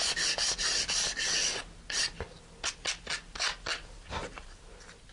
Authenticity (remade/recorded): recorded